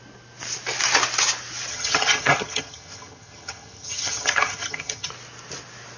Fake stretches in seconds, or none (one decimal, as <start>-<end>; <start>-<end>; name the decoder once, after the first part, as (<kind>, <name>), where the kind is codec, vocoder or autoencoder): 1.7-5.1 (vocoder, HiFi-GAN)